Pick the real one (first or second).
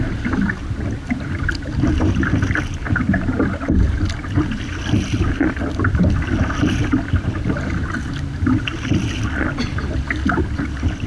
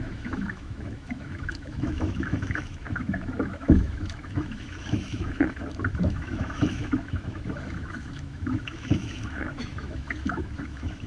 first